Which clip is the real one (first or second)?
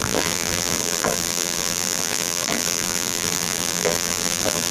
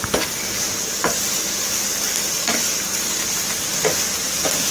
second